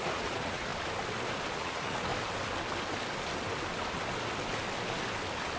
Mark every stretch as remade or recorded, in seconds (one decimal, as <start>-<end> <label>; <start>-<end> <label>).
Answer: 0.0-0.7 remade; 0.7-1.5 recorded; 1.5-2.1 remade; 2.1-5.6 recorded